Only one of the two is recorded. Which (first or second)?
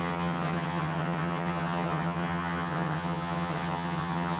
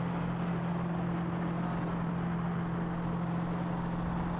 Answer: second